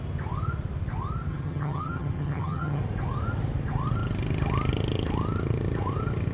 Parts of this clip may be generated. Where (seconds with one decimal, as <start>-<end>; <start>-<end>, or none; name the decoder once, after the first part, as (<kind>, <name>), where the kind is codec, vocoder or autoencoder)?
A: 1.3-2.8 (vocoder, HiFi-GAN)